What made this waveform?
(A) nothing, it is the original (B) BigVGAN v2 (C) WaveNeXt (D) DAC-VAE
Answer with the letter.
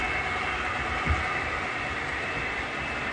A